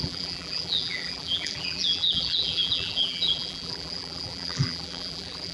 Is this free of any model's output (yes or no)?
no